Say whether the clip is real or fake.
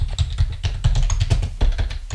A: real